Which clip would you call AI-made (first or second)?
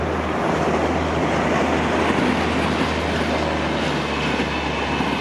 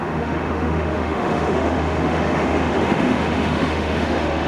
second